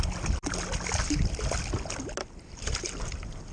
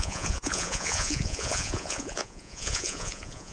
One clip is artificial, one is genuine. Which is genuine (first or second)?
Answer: first